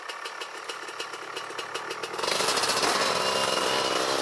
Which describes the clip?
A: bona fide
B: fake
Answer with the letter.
A